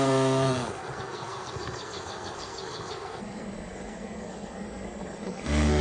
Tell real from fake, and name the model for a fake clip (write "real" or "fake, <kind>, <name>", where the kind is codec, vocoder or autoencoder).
fake, codec, SNAC